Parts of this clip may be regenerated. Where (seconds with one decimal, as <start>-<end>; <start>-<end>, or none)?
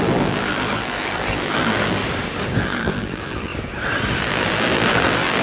0.0-2.0; 2.6-3.5; 4.2-5.4